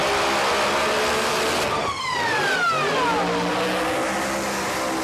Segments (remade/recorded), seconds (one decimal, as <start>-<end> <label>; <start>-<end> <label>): 0.0-5.0 recorded